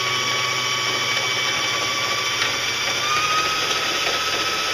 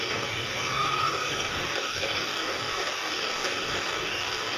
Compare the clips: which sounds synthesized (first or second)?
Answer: second